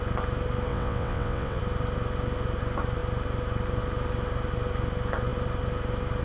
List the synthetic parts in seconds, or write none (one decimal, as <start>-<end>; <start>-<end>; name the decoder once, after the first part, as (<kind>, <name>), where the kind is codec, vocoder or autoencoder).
0.7-1.6 (vocoder, WaveNeXt)